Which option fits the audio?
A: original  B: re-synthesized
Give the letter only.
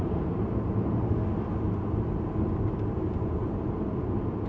A